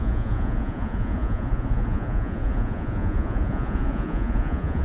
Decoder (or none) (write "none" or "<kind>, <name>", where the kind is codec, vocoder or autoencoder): vocoder, Vocos